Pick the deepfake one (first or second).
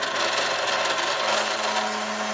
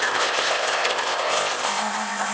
second